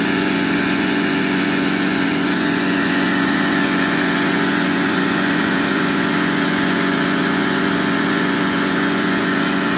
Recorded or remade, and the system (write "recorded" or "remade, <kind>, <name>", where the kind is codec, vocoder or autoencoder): remade, vocoder, Vocos